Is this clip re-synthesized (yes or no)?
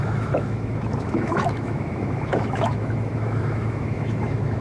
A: yes